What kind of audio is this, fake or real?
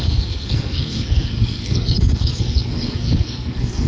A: fake